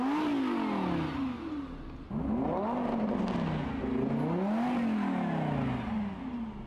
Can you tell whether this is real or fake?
real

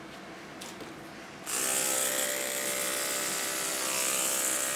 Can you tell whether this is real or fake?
real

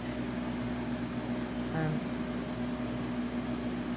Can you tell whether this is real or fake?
real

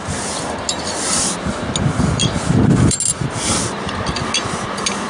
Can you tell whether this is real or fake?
real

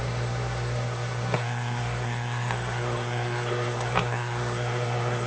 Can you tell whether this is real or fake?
fake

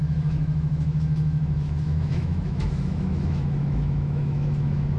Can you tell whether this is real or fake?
fake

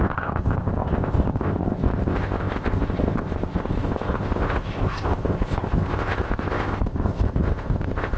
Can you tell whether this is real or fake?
fake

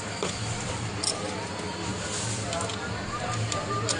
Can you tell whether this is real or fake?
fake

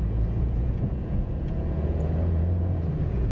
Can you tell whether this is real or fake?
fake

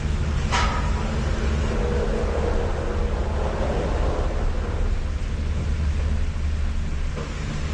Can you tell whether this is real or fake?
real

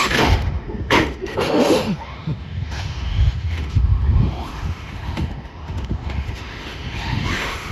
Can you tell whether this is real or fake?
fake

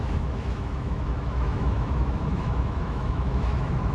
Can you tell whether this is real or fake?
fake